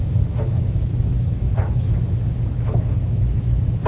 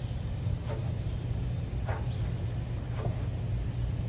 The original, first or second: second